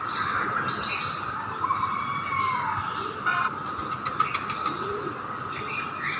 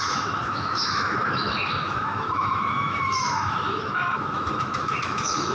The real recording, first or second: first